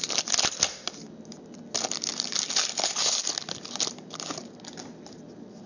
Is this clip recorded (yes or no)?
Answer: yes